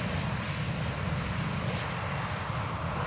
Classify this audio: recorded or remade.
recorded